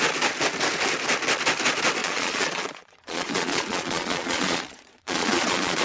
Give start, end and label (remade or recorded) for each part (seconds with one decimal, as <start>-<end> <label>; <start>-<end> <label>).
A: 0.0-2.0 recorded; 2.0-5.8 remade